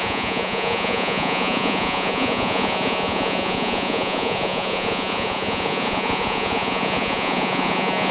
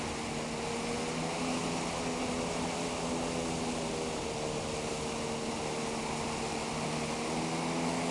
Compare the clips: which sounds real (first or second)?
second